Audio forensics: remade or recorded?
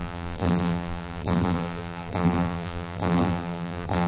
remade